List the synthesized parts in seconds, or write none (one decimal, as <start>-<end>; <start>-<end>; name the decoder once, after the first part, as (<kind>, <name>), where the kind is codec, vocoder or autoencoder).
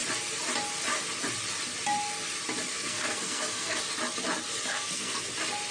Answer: 2.7-3.8 (codec, SNAC); 4.7-5.2